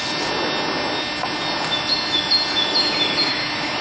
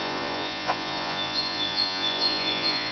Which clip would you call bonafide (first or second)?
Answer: first